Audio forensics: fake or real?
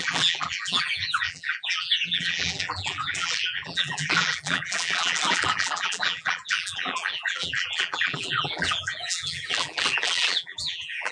fake